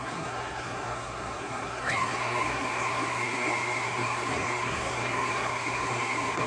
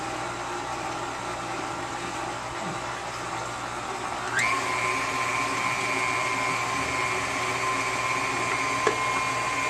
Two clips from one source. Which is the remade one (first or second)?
first